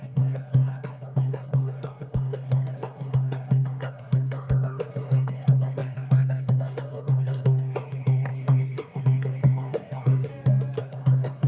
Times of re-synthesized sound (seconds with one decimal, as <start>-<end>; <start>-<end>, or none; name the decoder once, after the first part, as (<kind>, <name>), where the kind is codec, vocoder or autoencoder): 0.0-10.3 (codec, SNAC); 10.8-11.5